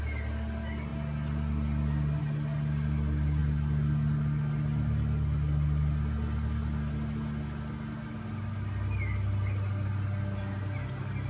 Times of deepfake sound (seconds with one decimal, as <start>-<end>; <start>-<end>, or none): none